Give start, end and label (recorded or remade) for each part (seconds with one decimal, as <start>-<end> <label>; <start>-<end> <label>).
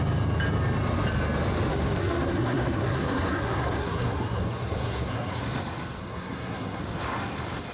0.0-1.7 recorded; 1.7-5.4 remade; 5.4-6.0 recorded; 6.0-6.8 remade; 6.8-7.7 recorded